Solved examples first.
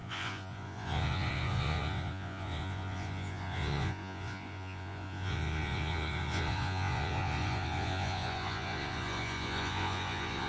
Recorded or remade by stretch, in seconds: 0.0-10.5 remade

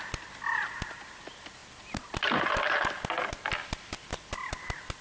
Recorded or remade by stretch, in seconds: 0.0-1.6 recorded; 1.6-4.6 remade; 4.6-5.0 recorded